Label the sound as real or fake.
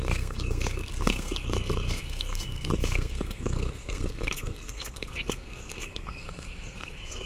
fake